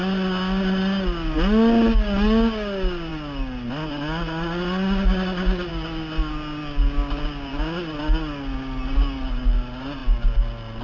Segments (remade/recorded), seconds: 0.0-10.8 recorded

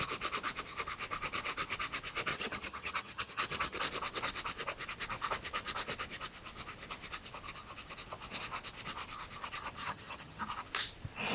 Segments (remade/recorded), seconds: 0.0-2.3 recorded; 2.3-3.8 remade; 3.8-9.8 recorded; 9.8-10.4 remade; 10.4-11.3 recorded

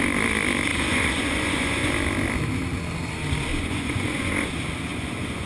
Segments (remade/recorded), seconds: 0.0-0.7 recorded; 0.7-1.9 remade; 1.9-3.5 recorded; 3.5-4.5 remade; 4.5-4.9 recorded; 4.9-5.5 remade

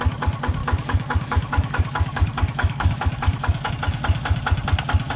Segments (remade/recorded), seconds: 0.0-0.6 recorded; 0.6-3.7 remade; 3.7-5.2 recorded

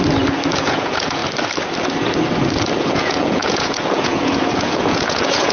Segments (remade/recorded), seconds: 0.0-0.6 recorded; 0.6-1.2 remade; 1.2-2.8 recorded; 2.8-5.5 remade

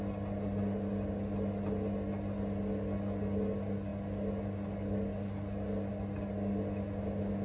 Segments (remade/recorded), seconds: 0.0-7.4 recorded